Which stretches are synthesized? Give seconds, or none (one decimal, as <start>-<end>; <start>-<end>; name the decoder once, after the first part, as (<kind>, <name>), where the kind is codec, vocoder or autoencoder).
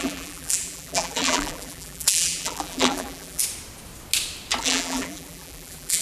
0.0-3.4 (vocoder, BigVGAN v2); 4.6-6.0